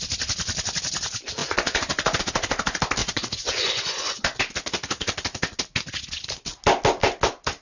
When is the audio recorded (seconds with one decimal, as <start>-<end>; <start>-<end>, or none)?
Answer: 0.0-1.4; 2.2-3.0; 4.4-7.6